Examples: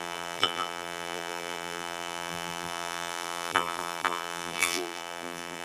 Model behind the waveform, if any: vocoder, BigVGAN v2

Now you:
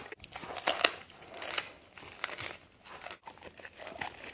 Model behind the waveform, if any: none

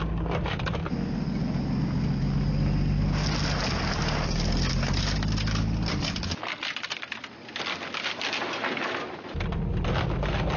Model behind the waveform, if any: none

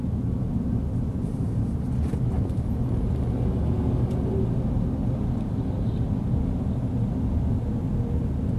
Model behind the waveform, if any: none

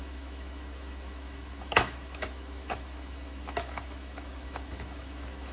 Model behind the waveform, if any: autoencoder, DAC-VAE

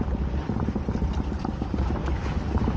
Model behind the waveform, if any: none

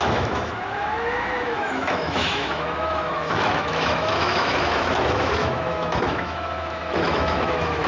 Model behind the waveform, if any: autoencoder, DAC-VAE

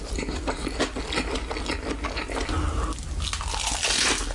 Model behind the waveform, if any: none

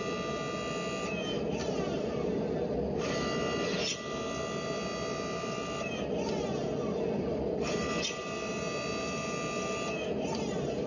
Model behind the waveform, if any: none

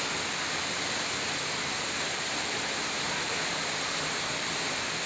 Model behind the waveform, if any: none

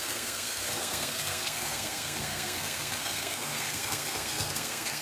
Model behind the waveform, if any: codec, SNAC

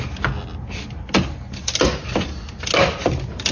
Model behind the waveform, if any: none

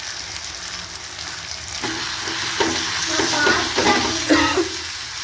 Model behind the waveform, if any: none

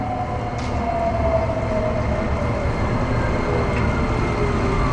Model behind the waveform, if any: none